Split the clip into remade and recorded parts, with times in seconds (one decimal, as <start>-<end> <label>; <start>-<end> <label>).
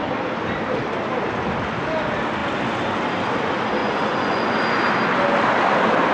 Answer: 0.0-3.8 recorded; 3.8-4.5 remade; 4.5-6.1 recorded